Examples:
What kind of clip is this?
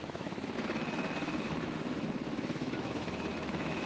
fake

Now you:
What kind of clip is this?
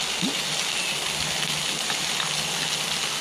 real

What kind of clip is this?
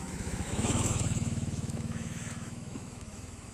fake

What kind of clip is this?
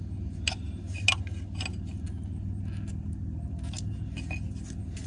real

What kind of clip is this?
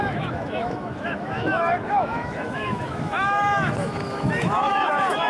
fake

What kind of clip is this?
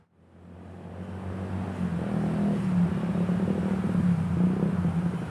real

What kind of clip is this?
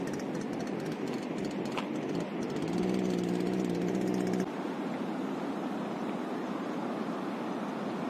real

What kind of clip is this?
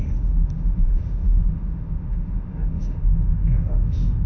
fake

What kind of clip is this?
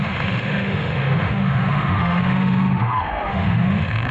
fake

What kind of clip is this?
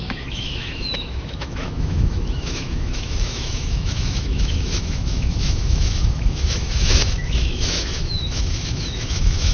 fake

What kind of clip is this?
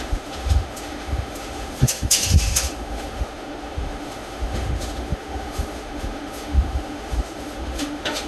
fake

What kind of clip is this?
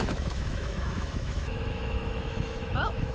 fake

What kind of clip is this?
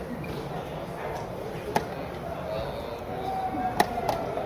real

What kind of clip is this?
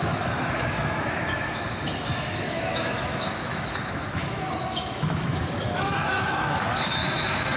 fake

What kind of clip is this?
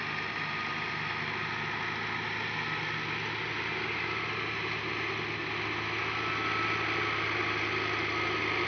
real